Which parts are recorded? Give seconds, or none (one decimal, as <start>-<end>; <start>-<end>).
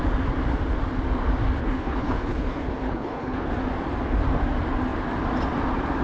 0.0-1.6; 3.5-6.0